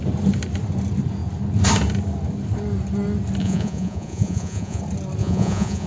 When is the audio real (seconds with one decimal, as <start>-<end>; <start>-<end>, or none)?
0.0-3.4; 4.8-5.2

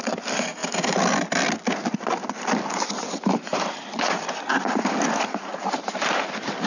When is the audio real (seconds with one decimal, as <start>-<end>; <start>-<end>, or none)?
0.0-6.7